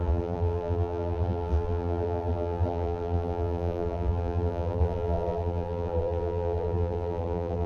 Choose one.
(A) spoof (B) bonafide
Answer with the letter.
A